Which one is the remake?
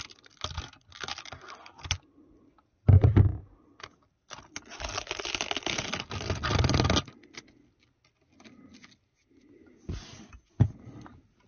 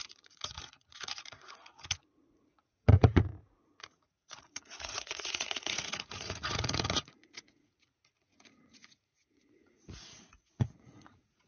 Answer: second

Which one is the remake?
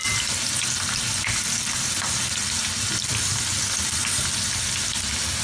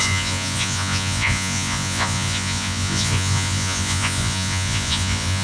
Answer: second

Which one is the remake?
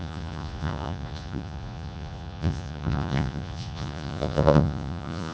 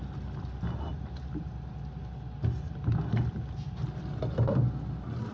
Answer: first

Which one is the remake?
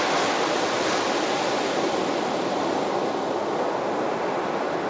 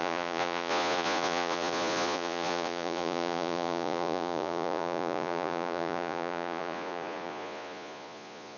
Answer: second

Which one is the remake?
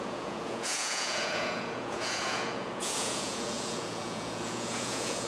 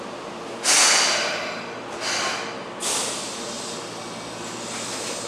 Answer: first